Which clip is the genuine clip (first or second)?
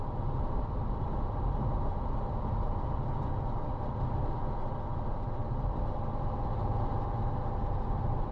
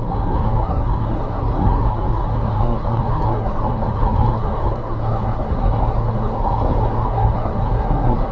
first